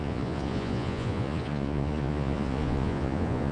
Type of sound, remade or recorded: remade